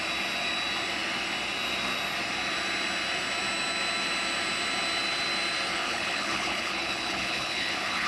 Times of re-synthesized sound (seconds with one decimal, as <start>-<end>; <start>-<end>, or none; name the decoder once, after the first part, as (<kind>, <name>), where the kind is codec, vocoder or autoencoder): 5.7-8.1 (codec, HILCodec)